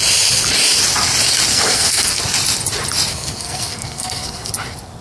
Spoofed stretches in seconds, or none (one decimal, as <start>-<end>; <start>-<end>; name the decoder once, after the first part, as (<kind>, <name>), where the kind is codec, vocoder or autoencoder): 1.5-2.2 (codec, SNAC); 3.1-4.5